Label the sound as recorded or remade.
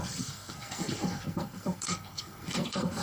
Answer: remade